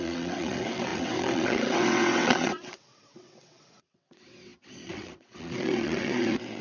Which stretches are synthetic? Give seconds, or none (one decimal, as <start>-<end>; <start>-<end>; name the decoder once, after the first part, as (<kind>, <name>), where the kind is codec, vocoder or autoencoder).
0.0-6.6 (vocoder, WaveNeXt)